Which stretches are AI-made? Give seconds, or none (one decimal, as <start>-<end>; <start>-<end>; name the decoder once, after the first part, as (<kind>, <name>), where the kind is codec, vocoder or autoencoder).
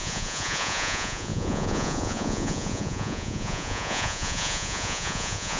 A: 0.0-5.6 (vocoder, Vocos)